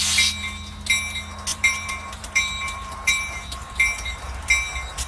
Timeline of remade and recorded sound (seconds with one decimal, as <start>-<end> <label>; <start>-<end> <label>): 0.0-1.5 recorded; 1.5-4.5 remade; 4.5-5.1 recorded